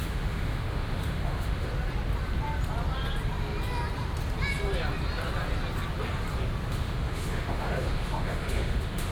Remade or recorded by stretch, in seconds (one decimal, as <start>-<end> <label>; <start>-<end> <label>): 0.0-1.7 remade; 1.7-6.7 recorded; 6.7-9.1 remade